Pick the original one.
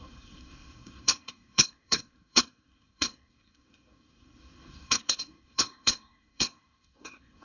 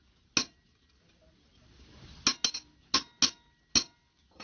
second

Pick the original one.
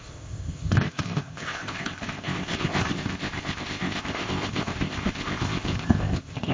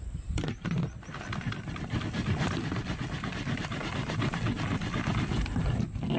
second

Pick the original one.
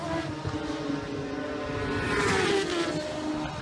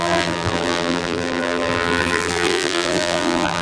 first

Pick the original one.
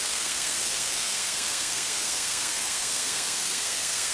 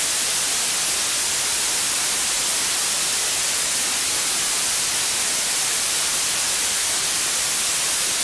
second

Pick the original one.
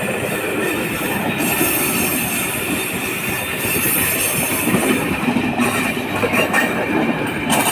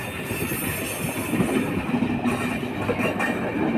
second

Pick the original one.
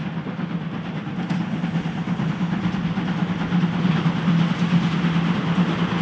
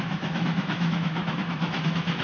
first